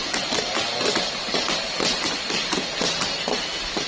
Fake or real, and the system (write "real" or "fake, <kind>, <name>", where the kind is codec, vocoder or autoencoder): real